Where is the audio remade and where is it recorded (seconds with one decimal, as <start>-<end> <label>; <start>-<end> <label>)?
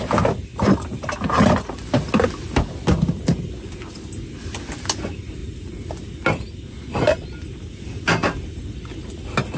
0.0-9.6 recorded